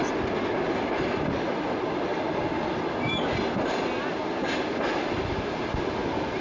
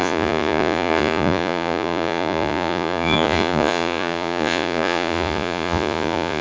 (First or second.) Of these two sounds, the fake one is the second